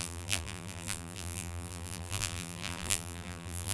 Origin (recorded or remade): remade